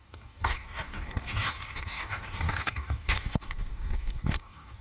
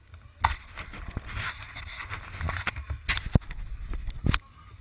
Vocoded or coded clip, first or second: first